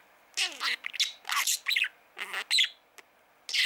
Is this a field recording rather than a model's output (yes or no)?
yes